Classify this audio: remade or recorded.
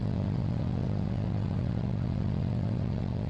remade